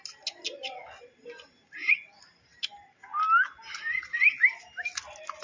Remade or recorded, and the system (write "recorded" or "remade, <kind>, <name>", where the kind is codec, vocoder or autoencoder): recorded